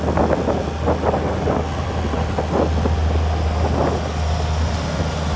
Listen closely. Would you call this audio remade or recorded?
recorded